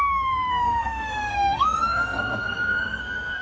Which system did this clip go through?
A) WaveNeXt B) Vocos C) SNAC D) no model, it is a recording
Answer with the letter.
C